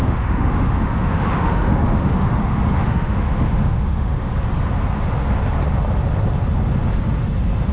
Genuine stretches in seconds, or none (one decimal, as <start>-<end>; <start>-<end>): 4.3-7.7

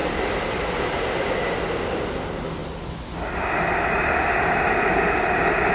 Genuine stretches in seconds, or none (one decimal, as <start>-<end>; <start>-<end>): 0.0-5.7

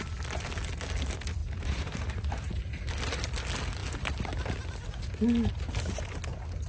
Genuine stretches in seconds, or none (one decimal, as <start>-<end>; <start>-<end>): 0.0-1.4; 3.0-6.7

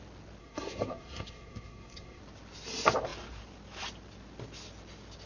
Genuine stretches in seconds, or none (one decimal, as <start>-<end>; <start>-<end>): 0.0-0.4; 2.2-5.3

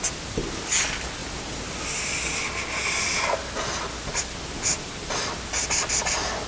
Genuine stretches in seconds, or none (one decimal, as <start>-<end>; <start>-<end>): 0.0-1.2; 2.0-6.5

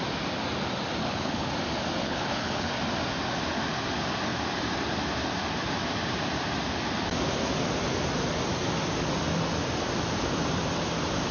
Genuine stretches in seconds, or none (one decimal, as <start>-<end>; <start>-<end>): 0.0-1.0; 1.5-2.0; 2.7-11.3